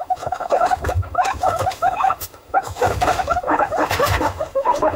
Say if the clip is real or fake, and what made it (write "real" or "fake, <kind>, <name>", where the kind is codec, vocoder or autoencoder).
fake, autoencoder, DAC-VAE